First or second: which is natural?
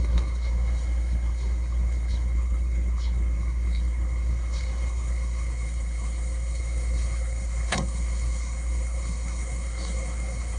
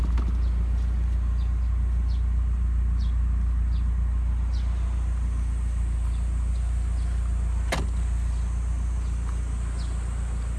second